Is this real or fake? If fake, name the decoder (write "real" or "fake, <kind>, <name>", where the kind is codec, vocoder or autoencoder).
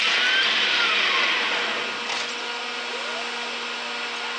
real